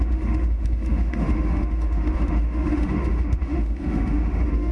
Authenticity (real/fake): fake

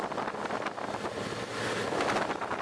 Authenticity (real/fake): real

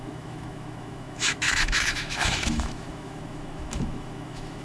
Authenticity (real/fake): fake